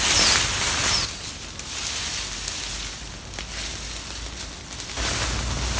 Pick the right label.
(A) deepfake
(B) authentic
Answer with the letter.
B